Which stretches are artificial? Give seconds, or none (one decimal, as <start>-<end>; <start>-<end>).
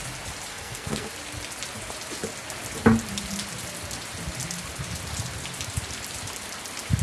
0.5-1.1